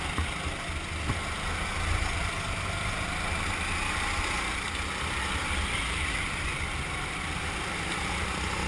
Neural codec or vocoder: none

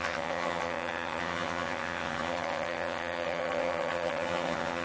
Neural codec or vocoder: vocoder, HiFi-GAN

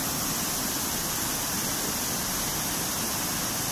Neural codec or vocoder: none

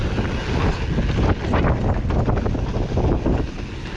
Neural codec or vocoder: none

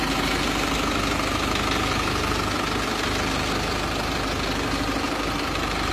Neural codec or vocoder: none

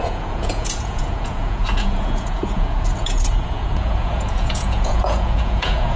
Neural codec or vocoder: vocoder, Vocos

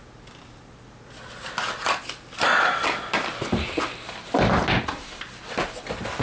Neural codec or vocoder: none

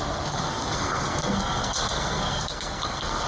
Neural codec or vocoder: codec, SNAC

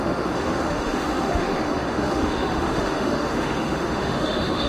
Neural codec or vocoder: autoencoder, DAC-VAE